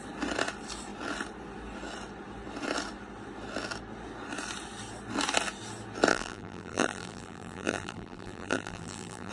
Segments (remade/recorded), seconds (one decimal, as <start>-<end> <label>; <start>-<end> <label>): 0.0-6.1 recorded; 6.1-9.3 remade

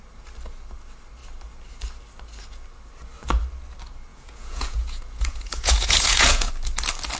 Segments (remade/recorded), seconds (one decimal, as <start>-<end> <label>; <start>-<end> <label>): 0.0-4.1 recorded; 4.1-6.5 remade; 6.5-7.2 recorded

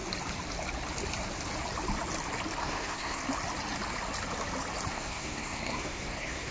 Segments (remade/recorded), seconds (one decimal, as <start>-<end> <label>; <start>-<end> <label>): 0.0-2.6 recorded; 2.6-3.2 remade; 3.2-4.9 recorded; 4.9-6.5 remade

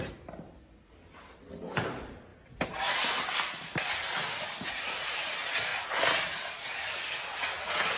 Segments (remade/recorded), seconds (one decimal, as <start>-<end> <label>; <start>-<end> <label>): 0.0-8.0 recorded

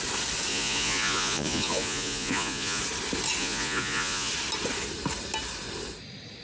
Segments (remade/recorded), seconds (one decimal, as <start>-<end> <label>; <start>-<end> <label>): 0.0-0.5 recorded; 0.5-2.8 remade; 2.8-3.4 recorded; 3.4-4.3 remade; 4.3-6.4 recorded

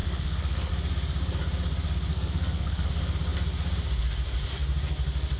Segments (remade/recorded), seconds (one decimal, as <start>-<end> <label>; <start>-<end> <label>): 0.0-0.7 remade; 0.7-2.1 recorded; 2.1-2.9 remade; 2.9-5.4 recorded

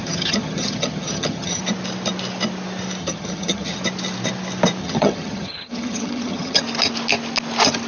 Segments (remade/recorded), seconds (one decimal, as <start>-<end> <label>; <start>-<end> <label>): 0.0-1.6 remade; 1.6-3.0 recorded; 3.0-3.8 remade; 3.8-4.8 recorded; 4.8-6.6 remade; 6.6-7.9 recorded

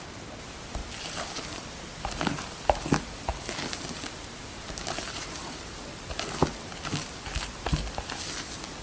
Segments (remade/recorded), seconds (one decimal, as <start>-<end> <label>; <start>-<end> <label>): 0.0-0.8 remade; 0.8-1.5 recorded; 1.5-3.3 remade; 3.3-4.6 recorded; 4.6-6.4 remade; 6.4-8.8 recorded